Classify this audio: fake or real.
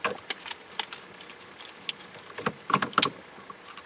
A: real